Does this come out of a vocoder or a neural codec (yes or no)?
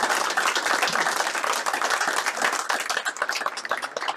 no